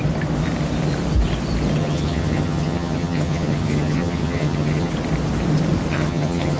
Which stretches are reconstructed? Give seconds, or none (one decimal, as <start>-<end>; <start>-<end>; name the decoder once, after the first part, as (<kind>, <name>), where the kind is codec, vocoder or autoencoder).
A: 1.8-4.9 (vocoder, HiFi-GAN); 5.9-6.6